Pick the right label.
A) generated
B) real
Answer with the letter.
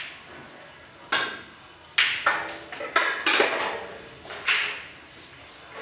B